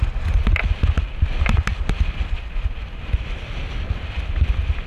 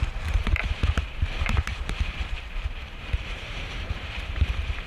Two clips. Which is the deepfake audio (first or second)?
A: second